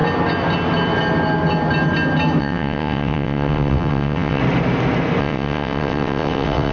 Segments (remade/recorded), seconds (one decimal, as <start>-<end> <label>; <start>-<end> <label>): 0.0-2.4 recorded; 2.4-4.4 remade; 4.4-5.2 recorded; 5.2-6.7 remade